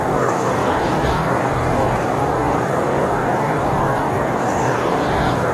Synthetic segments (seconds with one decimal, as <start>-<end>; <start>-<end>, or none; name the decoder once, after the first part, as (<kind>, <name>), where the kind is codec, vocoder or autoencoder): 0.0-5.5 (codec, DAC)